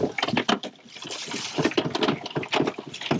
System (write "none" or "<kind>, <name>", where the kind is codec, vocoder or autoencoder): none